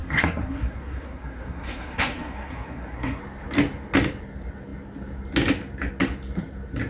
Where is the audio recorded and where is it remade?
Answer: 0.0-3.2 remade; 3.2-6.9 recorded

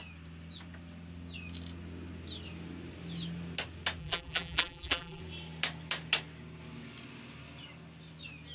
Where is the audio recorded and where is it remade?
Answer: 0.0-4.0 recorded; 4.0-5.2 remade; 5.2-8.5 recorded